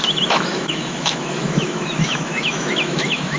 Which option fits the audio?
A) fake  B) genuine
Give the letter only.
A